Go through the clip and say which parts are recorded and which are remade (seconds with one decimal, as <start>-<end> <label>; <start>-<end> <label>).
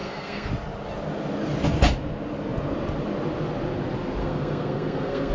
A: 0.0-0.5 remade; 0.5-4.2 recorded; 4.2-5.3 remade